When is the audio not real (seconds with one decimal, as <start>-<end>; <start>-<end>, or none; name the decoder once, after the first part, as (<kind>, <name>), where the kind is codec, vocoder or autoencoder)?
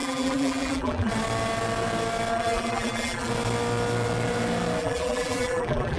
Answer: 0.0-1.1 (vocoder, BigVGAN v2); 2.3-3.3; 4.8-6.0